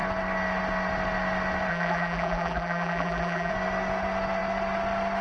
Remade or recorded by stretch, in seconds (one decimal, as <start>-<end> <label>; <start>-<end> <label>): 0.0-1.7 recorded; 1.7-3.5 remade; 3.5-5.2 recorded